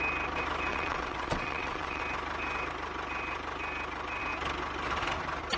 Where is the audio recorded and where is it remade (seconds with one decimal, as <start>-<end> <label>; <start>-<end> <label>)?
0.0-0.7 recorded; 0.7-2.0 remade; 2.0-5.6 recorded